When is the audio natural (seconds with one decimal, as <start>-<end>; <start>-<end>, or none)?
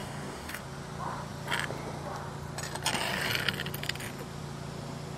0.6-5.2